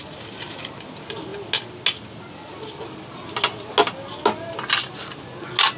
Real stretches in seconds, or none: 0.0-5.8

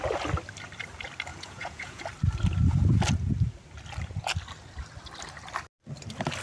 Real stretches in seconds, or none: 0.0-1.3; 2.0-6.4

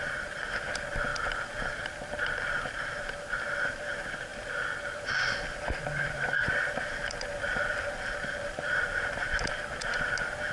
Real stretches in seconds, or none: 0.0-1.1; 1.8-4.3; 9.0-10.5

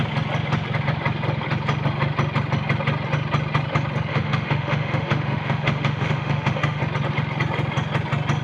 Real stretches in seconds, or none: 0.0-4.1; 6.8-8.4